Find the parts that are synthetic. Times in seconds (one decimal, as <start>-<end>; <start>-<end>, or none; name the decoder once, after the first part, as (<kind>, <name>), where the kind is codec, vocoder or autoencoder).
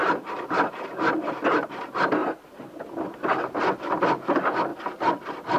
none